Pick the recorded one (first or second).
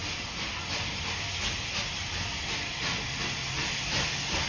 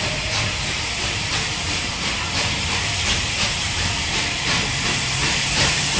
first